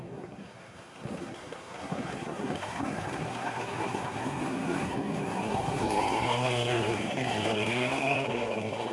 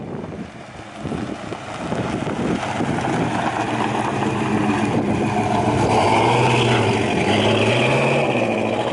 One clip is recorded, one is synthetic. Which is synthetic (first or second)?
first